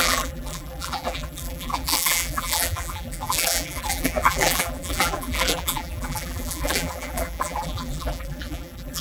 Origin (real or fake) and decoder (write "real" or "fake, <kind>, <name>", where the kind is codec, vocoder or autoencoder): fake, vocoder, BigVGAN v2